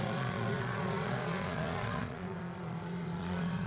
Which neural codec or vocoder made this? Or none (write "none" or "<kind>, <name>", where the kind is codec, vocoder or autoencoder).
vocoder, Vocos